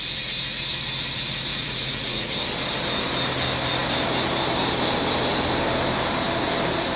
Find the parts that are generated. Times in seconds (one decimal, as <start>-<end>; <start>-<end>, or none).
1.5-2.3